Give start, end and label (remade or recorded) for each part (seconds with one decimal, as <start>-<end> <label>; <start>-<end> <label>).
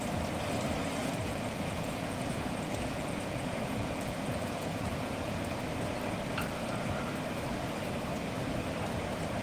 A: 0.0-1.0 recorded; 1.0-5.4 remade; 5.4-9.4 recorded